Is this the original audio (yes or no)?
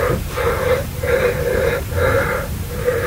no